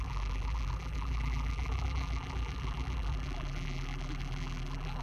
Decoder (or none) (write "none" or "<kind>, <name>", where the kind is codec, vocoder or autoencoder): vocoder, BigVGAN v2